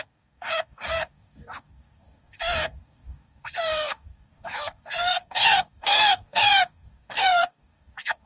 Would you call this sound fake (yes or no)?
yes